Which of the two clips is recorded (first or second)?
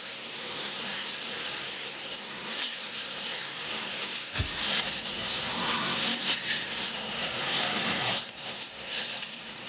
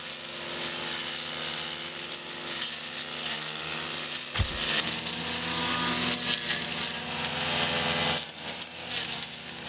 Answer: second